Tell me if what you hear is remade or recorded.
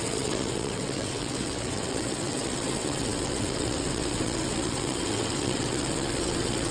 remade